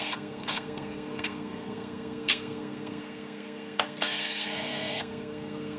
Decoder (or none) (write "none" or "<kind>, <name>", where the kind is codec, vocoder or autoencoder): codec, SNAC